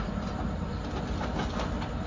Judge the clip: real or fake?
real